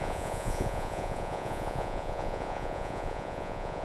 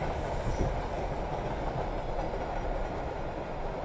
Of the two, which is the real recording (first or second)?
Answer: second